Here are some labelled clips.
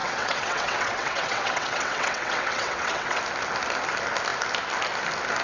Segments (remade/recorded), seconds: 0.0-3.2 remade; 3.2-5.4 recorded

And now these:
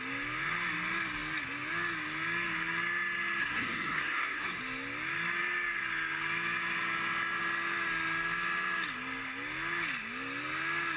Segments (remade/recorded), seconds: 0.0-3.4 recorded; 3.4-4.6 remade; 4.6-11.0 recorded

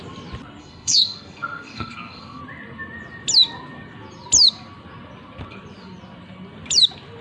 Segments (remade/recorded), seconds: 0.0-0.6 recorded; 0.6-2.4 remade; 2.4-7.2 recorded